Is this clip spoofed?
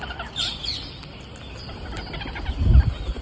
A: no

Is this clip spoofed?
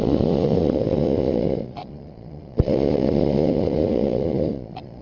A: yes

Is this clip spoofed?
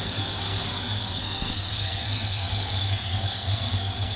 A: yes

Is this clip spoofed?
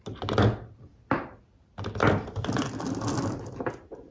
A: no